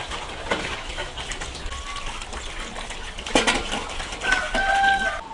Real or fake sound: real